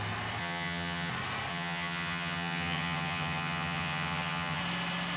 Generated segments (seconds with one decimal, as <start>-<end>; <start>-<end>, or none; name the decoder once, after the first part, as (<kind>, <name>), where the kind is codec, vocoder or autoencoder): 0.4-1.1 (vocoder, HiFi-GAN); 1.5-4.6